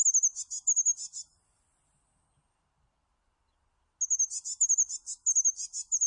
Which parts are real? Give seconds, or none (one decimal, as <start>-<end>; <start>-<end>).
0.0-6.1